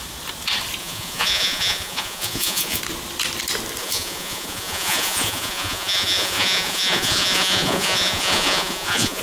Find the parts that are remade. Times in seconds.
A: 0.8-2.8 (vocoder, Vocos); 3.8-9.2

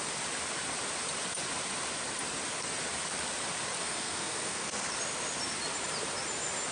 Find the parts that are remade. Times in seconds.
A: 3.8-4.9 (codec, SNAC)

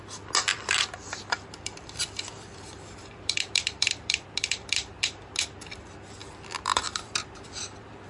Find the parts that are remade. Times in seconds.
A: 0.5-5.0 (vocoder, BigVGAN v2); 6.2-8.1

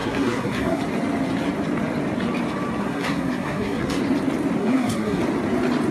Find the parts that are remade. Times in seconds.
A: 0.0-0.8 (codec, SNAC); 2.8-4.0; 4.6-5.2

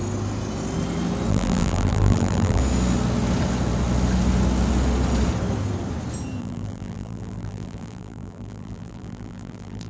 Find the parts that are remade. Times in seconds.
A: 1.3-2.6 (vocoder, BigVGAN v2); 6.4-9.9

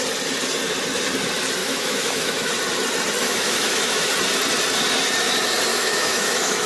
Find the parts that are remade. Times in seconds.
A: 1.6-2.5 (autoencoder, DAC-VAE); 3.2-4.1; 5.7-6.7

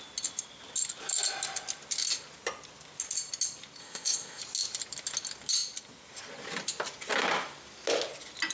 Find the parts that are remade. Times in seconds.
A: 3.8-4.4 (codec, ZipCodec)